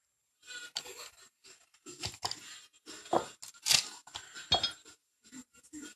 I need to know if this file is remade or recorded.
recorded